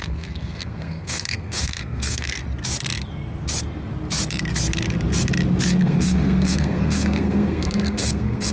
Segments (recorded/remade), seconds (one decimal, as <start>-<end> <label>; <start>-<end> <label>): 0.0-2.4 remade; 2.4-5.8 recorded; 5.8-8.5 remade